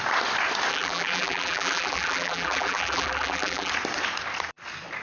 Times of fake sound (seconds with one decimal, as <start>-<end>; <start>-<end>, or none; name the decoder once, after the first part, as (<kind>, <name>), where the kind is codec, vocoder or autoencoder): 0.7-3.7 (vocoder, BigVGAN v2)